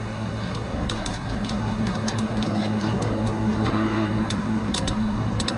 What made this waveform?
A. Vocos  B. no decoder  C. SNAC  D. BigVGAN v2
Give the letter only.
C